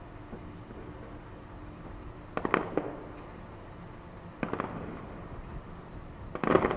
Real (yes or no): yes